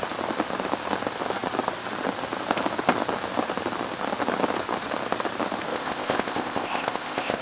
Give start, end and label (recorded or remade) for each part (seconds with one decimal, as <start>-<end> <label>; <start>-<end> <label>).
0.0-5.7 recorded; 5.7-7.4 remade